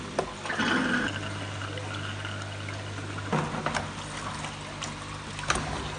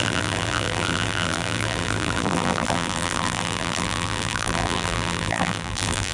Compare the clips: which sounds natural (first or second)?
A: first